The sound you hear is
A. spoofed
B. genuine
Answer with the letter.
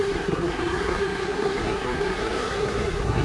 A